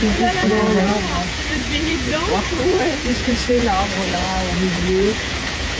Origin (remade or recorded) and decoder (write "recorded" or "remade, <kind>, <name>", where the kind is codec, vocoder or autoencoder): remade, vocoder, Vocos